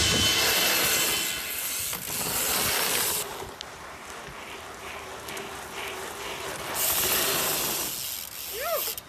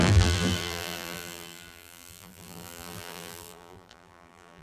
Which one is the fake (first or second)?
second